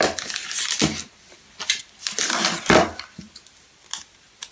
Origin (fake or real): real